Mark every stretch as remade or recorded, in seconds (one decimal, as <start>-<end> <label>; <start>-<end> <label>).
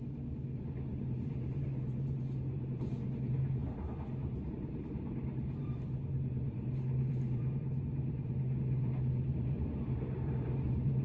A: 0.0-11.0 remade